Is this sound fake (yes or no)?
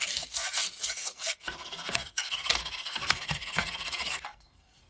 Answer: yes